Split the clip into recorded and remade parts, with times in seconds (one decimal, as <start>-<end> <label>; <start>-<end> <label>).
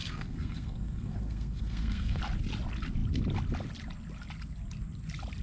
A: 0.0-2.2 remade; 2.2-5.4 recorded